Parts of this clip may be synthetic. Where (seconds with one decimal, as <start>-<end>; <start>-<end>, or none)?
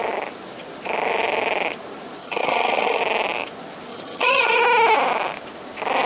2.2-3.0; 3.9-4.6